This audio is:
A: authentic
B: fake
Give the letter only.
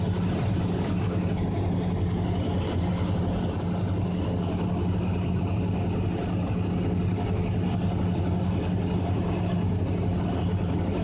A